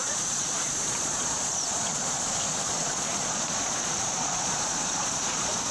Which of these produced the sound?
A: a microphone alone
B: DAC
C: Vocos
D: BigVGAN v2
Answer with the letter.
C